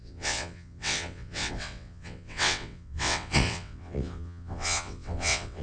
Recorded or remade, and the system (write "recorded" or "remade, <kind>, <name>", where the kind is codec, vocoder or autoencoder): remade, vocoder, WaveNeXt